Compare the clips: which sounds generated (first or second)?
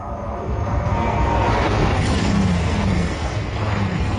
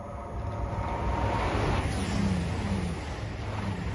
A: first